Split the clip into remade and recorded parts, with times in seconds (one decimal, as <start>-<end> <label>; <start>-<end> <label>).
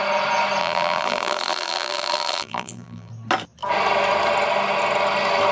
0.0-0.6 recorded; 0.6-3.1 remade; 3.1-5.5 recorded